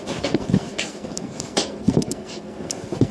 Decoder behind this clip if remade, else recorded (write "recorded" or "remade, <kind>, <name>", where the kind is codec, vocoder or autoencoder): remade, codec, SNAC